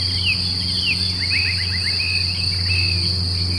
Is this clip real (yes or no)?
yes